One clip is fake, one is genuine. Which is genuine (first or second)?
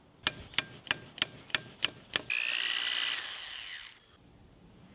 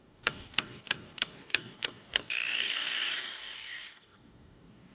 first